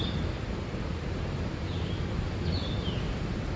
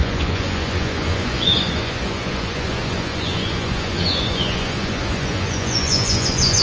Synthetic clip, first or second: second